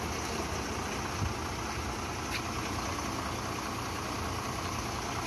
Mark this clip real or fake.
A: real